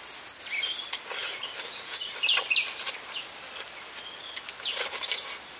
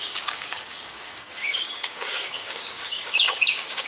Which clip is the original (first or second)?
first